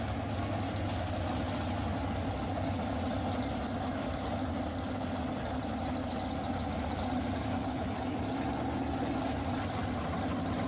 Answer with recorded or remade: recorded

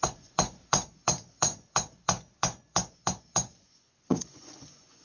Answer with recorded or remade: remade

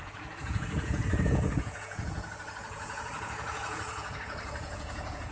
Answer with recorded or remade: remade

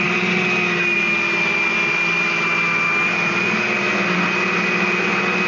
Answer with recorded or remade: recorded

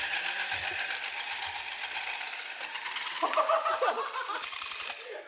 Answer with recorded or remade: recorded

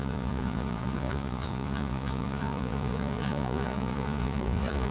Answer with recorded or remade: remade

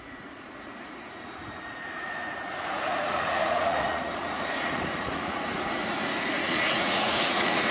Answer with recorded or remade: remade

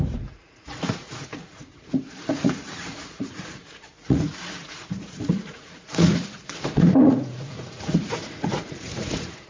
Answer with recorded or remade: remade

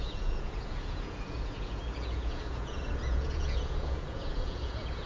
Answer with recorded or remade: remade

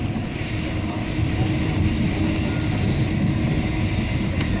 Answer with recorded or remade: recorded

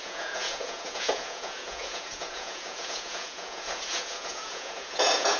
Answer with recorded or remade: remade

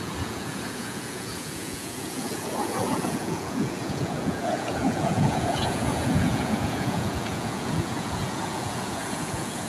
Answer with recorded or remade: remade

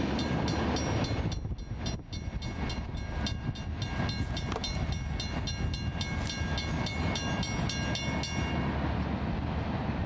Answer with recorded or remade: recorded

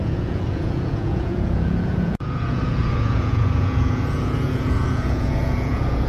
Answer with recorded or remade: remade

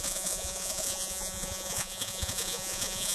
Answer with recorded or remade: remade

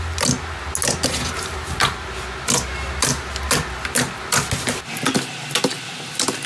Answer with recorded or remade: recorded